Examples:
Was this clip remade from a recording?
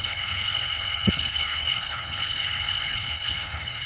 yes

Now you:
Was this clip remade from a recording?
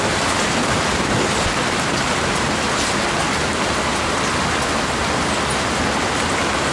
no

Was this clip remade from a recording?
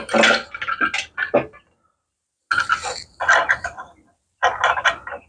no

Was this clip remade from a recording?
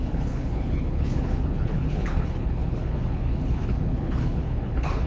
yes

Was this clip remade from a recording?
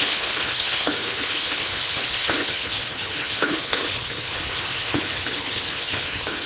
yes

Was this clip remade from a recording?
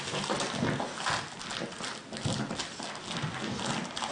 no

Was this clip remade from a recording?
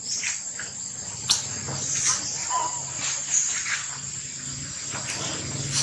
no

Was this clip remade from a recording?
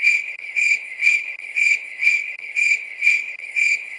yes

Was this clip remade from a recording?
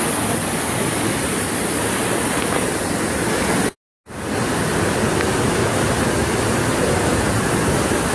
no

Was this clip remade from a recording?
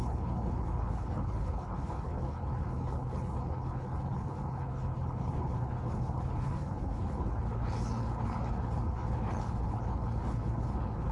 yes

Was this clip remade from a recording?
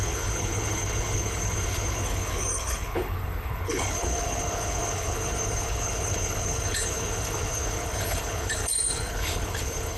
yes